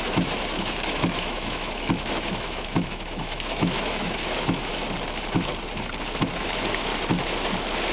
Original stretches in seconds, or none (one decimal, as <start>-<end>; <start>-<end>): 4.7-6.4; 6.9-7.9